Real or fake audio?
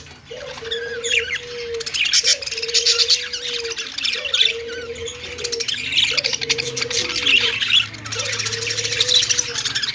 real